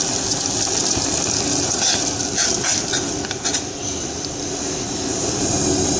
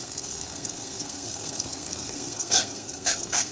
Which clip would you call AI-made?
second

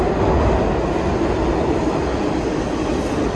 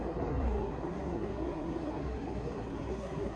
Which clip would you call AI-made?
second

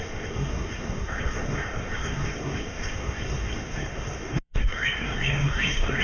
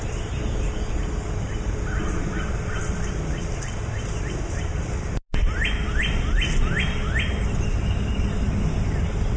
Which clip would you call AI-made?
first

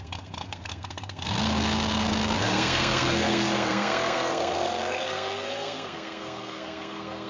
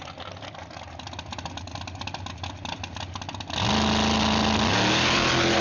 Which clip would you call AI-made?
first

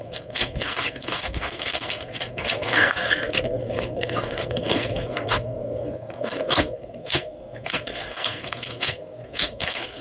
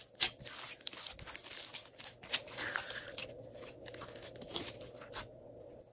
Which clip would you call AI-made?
first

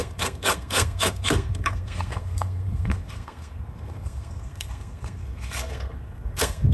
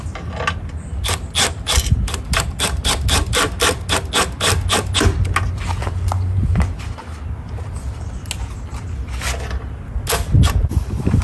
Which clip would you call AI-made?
first